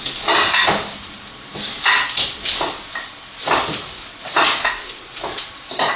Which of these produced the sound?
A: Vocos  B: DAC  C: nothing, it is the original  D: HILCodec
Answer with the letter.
C